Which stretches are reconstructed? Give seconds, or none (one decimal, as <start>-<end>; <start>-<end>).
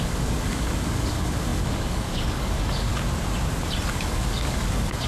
0.0-2.9; 3.9-5.1